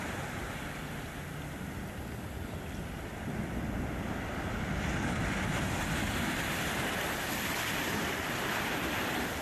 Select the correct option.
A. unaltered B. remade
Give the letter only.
A